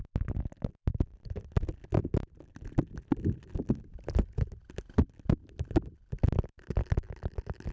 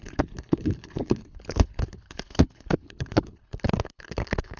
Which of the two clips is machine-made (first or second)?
second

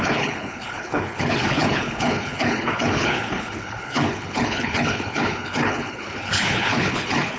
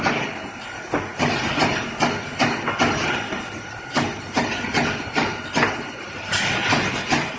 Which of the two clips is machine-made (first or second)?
first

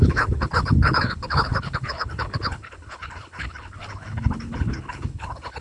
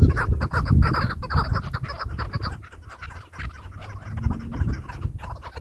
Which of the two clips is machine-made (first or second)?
first